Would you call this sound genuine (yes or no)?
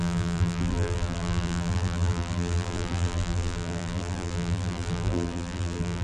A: no